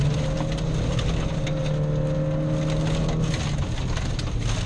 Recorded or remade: recorded